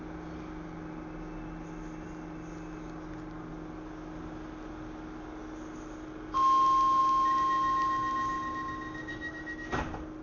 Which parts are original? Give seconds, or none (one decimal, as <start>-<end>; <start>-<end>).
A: 0.0-9.1; 9.7-10.2